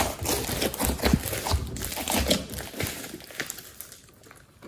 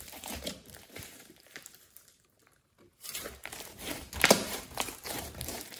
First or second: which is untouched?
first